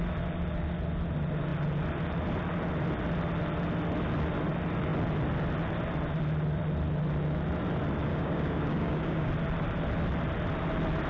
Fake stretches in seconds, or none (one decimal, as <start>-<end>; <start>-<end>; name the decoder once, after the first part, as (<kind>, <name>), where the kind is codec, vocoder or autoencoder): 8.1-9.3 (codec, DAC)